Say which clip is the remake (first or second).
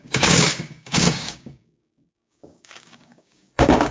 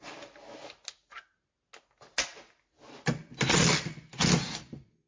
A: first